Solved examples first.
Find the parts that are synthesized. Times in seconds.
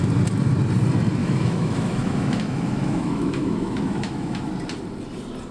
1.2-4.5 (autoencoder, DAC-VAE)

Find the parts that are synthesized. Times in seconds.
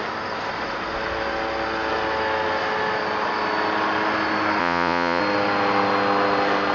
4.6-5.2 (vocoder, Vocos)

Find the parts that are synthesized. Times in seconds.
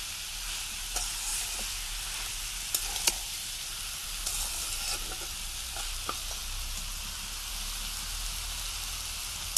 none